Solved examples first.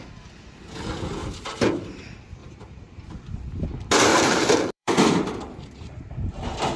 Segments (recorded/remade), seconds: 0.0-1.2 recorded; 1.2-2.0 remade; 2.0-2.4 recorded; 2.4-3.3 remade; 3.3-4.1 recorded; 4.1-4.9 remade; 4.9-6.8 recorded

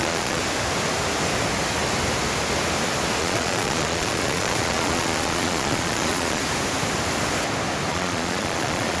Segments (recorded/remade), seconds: 0.0-0.4 remade; 0.4-3.2 recorded; 3.2-6.4 remade; 6.4-7.9 recorded; 7.9-9.0 remade

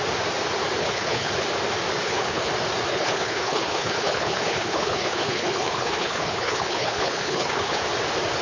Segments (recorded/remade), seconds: 0.0-0.8 recorded; 0.8-1.3 remade; 1.3-2.0 recorded; 2.0-2.5 remade; 2.5-2.9 recorded; 2.9-7.8 remade; 7.8-8.4 recorded

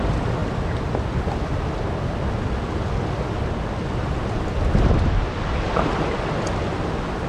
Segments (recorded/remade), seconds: 0.0-7.3 recorded

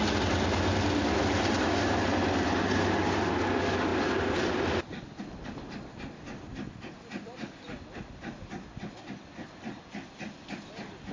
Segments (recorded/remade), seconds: 0.0-11.1 recorded

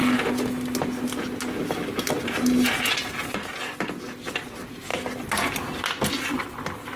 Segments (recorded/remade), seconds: 0.0-7.0 recorded

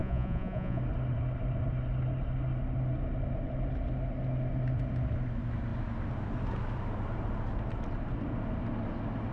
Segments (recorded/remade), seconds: 0.0-0.8 remade; 0.8-9.3 recorded